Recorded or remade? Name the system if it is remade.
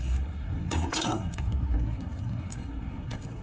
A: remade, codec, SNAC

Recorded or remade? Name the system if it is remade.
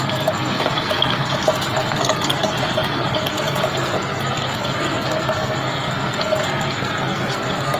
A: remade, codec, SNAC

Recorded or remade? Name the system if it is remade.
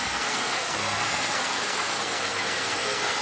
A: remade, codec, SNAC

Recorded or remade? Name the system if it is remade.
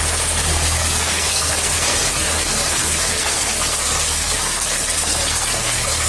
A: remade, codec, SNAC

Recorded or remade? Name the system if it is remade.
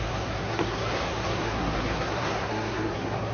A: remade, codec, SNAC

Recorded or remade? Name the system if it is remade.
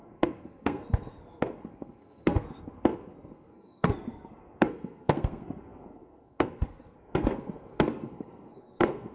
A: remade, codec, SNAC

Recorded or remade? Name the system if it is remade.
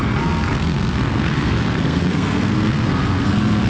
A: remade, codec, SNAC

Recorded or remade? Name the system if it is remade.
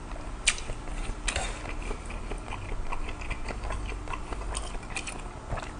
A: recorded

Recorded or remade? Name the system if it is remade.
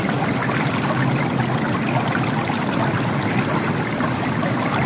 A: recorded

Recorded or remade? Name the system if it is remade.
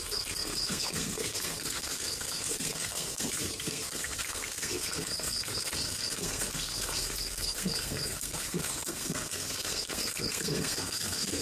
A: remade, codec, SNAC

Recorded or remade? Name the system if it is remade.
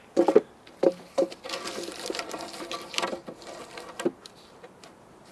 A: recorded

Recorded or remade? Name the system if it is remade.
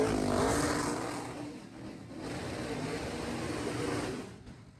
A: recorded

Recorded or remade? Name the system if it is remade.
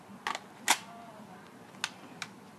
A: recorded